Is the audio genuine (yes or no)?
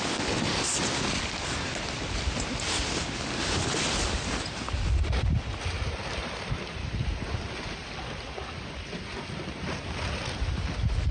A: yes